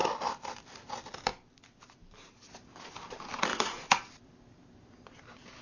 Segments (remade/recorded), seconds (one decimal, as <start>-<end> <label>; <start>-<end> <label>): 0.0-3.5 recorded; 3.5-4.1 remade; 4.1-5.6 recorded